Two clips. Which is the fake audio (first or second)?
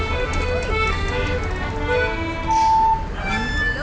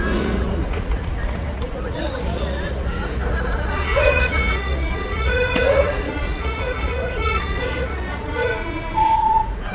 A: second